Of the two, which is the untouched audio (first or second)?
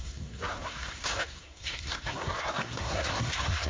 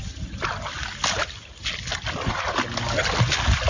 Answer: second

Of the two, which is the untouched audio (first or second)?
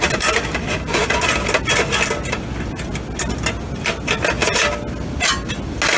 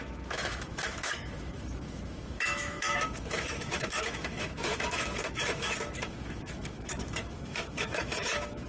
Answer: first